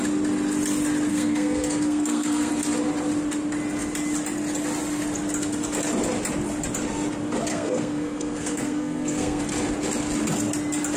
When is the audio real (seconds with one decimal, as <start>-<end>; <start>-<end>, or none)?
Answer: 0.0-1.1; 2.5-7.5; 9.4-11.0